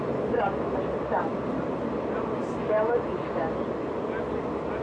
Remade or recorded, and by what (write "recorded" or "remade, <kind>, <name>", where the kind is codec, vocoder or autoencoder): recorded